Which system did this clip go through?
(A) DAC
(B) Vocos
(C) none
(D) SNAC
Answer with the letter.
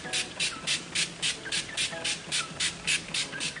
C